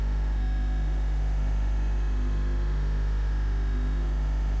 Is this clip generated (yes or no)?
yes